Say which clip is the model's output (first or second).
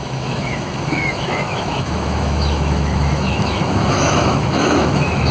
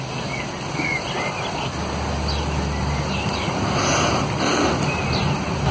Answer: first